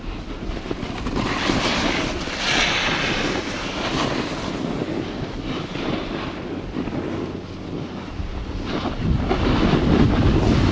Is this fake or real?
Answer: real